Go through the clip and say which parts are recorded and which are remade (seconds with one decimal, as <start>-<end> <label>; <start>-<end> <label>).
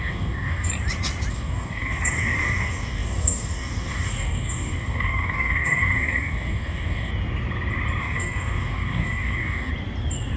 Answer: 0.0-0.7 remade; 0.7-1.3 recorded; 1.3-7.1 remade; 7.1-8.0 recorded; 8.0-9.7 remade; 9.7-10.4 recorded